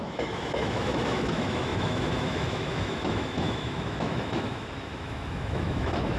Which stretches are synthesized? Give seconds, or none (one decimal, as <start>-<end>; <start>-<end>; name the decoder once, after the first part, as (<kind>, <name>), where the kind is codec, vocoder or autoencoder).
0.0-6.2 (autoencoder, DAC-VAE)